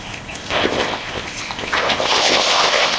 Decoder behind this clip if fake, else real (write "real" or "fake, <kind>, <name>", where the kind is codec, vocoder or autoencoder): fake, codec, ZipCodec